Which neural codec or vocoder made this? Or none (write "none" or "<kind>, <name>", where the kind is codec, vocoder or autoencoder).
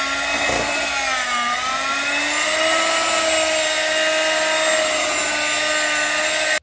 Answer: none